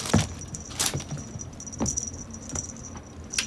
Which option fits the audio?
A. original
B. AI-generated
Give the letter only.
A